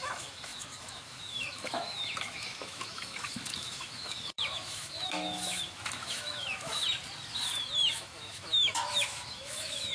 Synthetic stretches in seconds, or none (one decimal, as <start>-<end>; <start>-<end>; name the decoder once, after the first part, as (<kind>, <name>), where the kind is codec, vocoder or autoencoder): 0.0-6.8 (autoencoder, DAC-VAE); 7.9-9.9

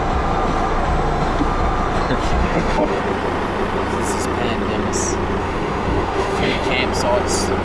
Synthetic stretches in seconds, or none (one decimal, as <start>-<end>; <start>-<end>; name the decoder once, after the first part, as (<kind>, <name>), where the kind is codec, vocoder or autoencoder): 2.4-3.0 (autoencoder, DAC-VAE); 5.4-6.7

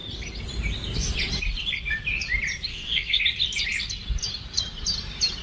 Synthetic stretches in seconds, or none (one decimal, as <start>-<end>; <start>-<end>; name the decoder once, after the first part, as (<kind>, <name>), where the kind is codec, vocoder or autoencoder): 2.7-3.2 (codec, SNAC)

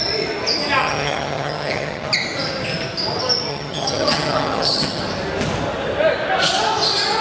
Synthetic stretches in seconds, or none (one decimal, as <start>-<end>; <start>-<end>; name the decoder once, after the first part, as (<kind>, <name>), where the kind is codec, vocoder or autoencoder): 0.8-2.1 (vocoder, HiFi-GAN); 3.5-5.0

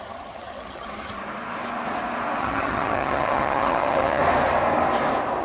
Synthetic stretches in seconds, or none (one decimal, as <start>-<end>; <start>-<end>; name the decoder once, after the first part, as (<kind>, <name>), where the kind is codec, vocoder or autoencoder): 0.0-1.2 (vocoder, HiFi-GAN); 2.4-4.2

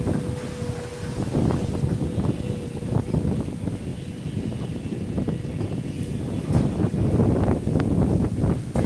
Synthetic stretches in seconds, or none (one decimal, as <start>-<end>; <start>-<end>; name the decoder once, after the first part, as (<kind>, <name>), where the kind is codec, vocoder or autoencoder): none

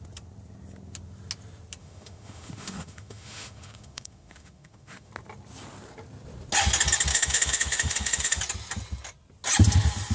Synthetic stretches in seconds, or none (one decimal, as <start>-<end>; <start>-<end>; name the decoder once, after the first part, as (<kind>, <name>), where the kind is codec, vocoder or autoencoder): 1.8-5.1 (autoencoder, DAC-VAE); 7.1-8.4